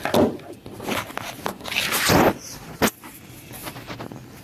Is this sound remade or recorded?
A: recorded